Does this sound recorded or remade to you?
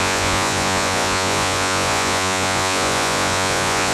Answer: remade